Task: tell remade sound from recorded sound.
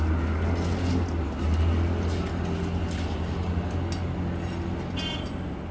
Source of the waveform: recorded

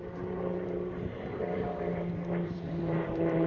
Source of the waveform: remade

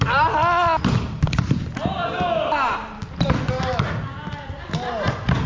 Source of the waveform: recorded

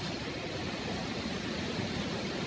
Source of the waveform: recorded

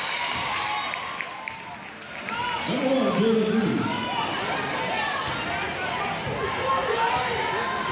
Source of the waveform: recorded